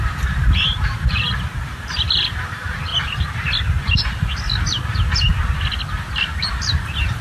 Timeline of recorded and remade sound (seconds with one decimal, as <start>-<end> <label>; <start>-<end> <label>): 0.0-1.2 remade; 1.2-1.9 recorded; 1.9-2.9 remade; 2.9-7.2 recorded